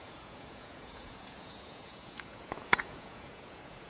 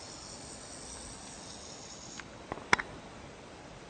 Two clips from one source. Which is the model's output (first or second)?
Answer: first